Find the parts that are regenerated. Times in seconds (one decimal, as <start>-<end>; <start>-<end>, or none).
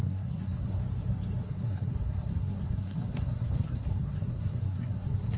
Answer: 0.0-0.8; 1.4-5.4